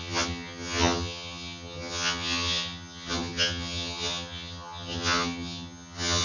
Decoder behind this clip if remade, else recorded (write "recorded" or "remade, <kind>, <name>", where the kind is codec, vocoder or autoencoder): remade, vocoder, HiFi-GAN